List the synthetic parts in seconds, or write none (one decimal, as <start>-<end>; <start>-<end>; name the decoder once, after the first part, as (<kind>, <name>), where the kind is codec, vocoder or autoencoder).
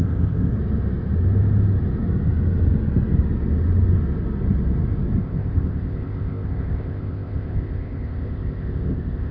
0.0-0.5 (codec, ZipCodec); 5.2-9.3